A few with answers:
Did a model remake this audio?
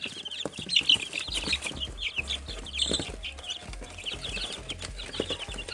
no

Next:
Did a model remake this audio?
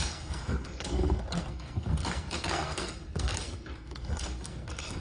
yes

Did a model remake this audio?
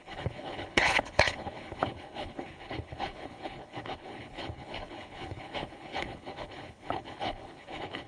yes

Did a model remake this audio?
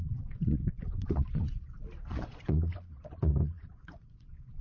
yes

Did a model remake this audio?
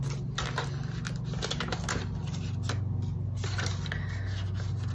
no